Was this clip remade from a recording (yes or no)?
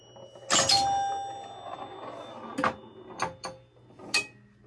no